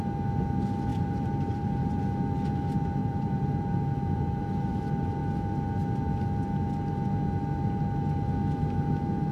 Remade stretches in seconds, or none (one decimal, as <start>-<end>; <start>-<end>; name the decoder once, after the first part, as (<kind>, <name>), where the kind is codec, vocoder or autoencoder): 0.9-2.0 (vocoder, BigVGAN v2); 3.0-4.8